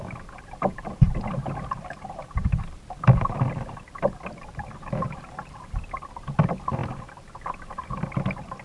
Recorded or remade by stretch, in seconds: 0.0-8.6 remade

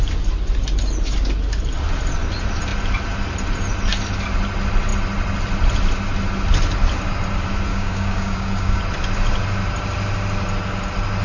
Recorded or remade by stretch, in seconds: 0.0-7.7 recorded; 7.7-8.8 remade; 8.8-11.2 recorded

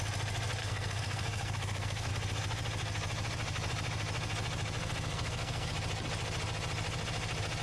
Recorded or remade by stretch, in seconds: 0.0-0.6 recorded; 0.6-2.1 remade; 2.1-4.8 recorded; 4.8-5.7 remade; 5.7-7.6 recorded

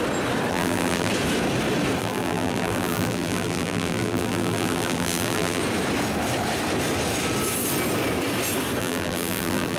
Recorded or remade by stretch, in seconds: 0.0-0.5 recorded; 0.5-1.1 remade; 1.1-2.0 recorded; 2.0-5.6 remade; 5.6-8.8 recorded; 8.8-9.8 remade